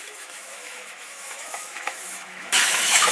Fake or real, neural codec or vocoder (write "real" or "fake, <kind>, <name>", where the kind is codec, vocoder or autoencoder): fake, autoencoder, DAC-VAE